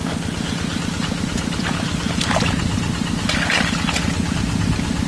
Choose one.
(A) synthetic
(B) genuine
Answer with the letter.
B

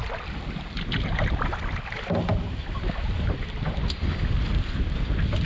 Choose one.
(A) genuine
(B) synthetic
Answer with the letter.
A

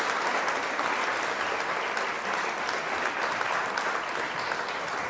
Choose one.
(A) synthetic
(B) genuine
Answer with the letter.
B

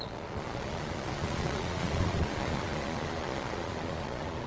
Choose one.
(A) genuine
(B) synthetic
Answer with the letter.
B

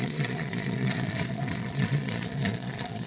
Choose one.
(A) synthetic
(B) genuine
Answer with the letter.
A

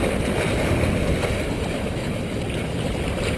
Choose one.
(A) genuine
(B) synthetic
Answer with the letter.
A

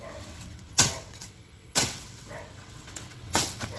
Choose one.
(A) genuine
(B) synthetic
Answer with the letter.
B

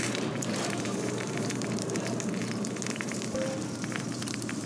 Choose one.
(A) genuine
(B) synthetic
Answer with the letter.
B